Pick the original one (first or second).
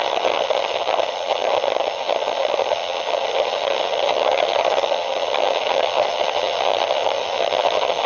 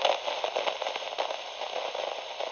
second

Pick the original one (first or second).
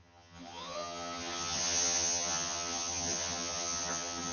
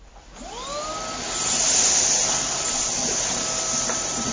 second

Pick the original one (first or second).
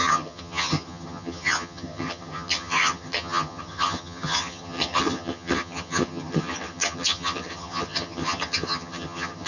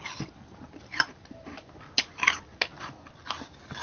second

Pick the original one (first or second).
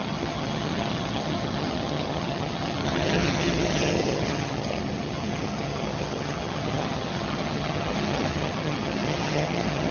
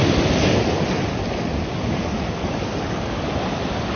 second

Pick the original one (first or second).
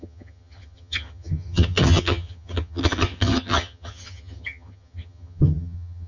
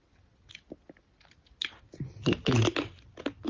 second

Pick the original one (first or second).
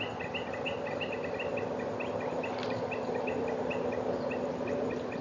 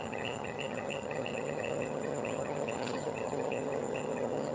first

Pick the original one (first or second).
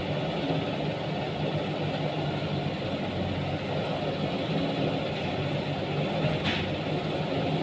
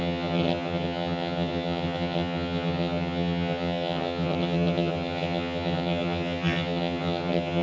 first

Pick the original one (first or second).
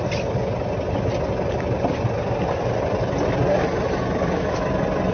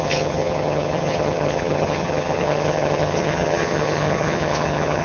first